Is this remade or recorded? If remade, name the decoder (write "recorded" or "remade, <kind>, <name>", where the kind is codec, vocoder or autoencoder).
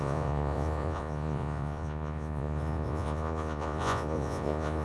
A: remade, vocoder, Vocos